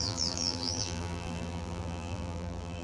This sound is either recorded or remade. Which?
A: remade